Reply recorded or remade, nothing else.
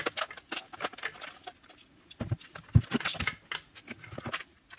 recorded